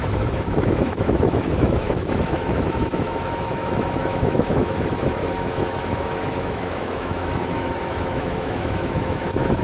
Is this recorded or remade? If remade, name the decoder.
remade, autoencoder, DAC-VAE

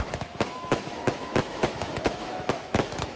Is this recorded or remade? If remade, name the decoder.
remade, autoencoder, DAC-VAE